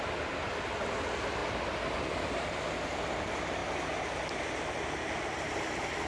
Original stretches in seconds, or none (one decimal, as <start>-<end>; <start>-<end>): 0.0-6.1